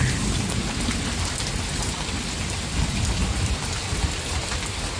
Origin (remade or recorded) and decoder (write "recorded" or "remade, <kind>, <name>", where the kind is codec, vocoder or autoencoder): recorded